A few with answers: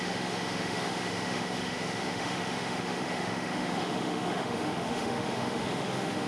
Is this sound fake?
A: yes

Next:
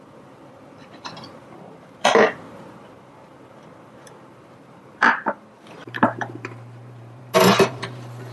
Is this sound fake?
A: yes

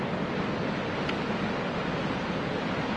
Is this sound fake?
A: no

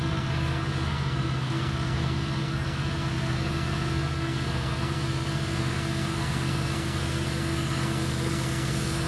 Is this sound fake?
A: yes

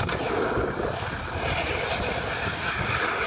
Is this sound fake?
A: no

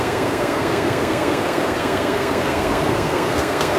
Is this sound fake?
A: yes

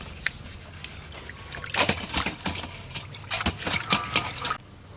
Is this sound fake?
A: no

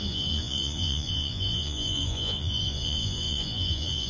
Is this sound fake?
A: yes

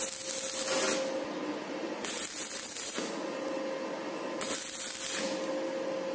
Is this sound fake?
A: no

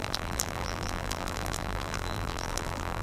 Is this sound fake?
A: yes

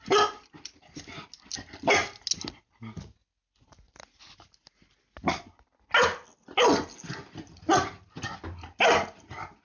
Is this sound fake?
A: no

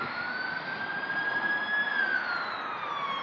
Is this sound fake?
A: no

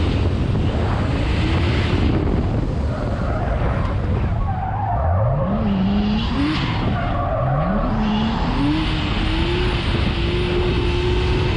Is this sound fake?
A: no